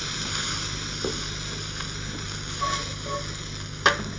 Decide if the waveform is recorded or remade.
recorded